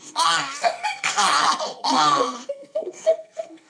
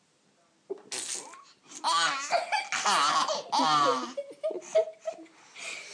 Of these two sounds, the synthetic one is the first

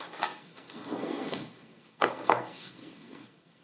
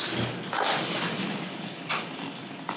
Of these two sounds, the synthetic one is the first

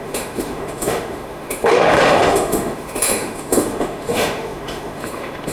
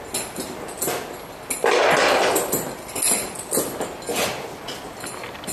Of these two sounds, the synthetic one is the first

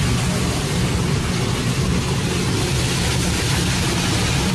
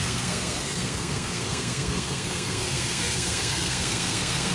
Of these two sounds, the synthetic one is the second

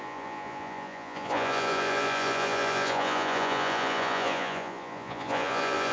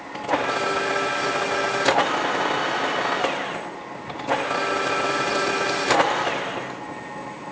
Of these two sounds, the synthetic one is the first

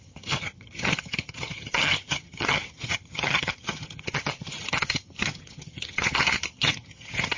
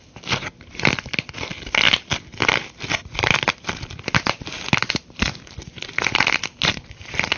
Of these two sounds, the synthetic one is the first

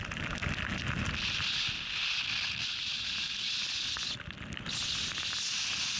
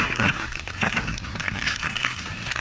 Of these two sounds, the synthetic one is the second